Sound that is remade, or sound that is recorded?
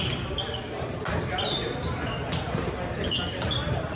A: recorded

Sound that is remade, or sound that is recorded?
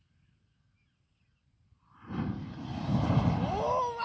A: recorded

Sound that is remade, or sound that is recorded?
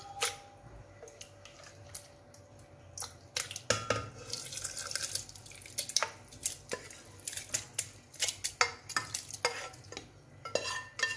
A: recorded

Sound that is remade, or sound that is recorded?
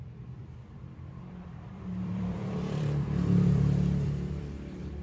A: remade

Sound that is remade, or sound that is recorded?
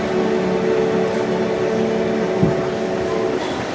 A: recorded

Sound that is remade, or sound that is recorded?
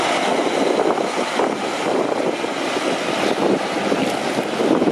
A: recorded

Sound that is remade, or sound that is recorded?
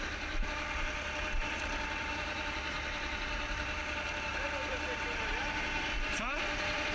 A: remade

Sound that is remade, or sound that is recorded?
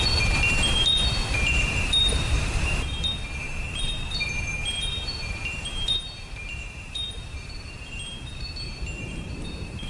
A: remade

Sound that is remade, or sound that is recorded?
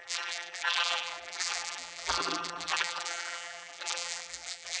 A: remade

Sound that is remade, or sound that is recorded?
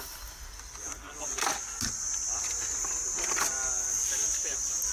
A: recorded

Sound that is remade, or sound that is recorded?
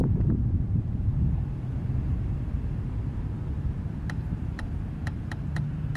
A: remade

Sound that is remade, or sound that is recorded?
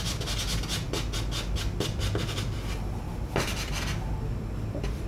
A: recorded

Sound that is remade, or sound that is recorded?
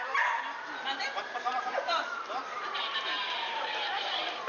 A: remade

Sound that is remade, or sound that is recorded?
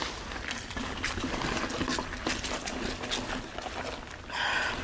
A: recorded